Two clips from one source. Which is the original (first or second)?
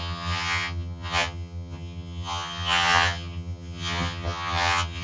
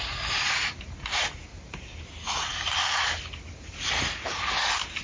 second